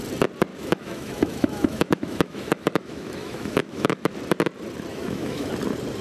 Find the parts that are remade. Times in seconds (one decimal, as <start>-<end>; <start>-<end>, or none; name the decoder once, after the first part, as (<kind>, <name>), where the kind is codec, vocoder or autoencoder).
0.5-4.1 (autoencoder, DAC-VAE); 4.9-5.5